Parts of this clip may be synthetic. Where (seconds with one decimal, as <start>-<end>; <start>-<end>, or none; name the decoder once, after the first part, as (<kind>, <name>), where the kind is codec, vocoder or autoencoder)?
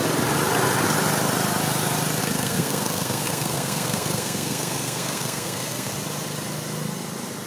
2.2-5.9 (codec, SNAC)